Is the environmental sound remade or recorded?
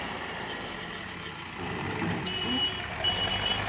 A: recorded